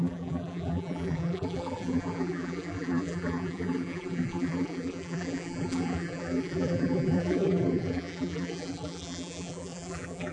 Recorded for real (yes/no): no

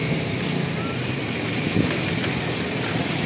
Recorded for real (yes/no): yes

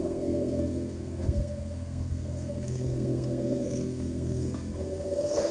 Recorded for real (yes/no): no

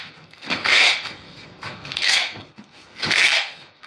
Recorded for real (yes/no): no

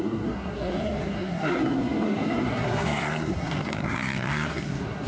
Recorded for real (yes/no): no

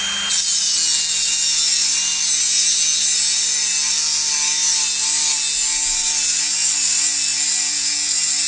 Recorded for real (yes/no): yes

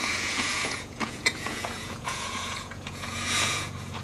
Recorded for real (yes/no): no